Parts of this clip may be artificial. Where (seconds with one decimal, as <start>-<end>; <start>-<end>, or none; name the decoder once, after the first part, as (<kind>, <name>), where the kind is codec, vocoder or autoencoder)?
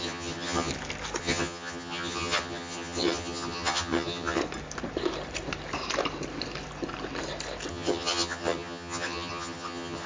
0.0-0.7 (vocoder, HiFi-GAN); 1.2-4.4; 7.7-10.1